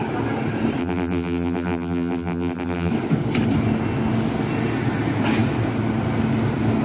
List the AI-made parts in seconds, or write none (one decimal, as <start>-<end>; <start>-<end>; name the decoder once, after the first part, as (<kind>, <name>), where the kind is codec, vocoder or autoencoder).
0.8-2.9 (vocoder, BigVGAN v2)